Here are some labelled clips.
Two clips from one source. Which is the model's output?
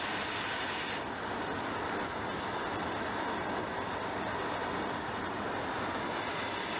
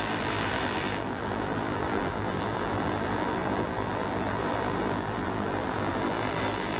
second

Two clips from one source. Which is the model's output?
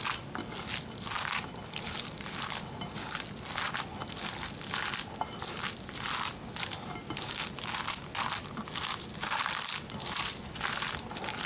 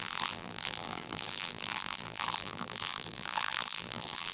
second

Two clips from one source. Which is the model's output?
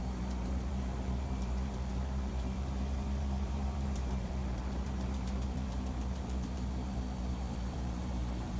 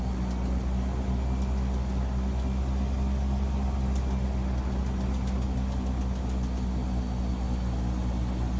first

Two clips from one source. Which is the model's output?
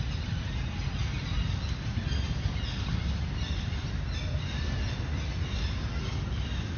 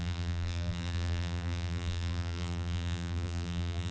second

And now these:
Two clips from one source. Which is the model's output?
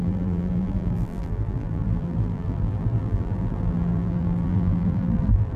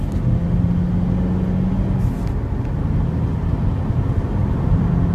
first